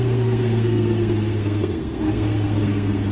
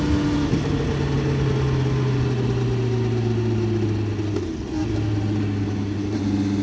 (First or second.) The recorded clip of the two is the second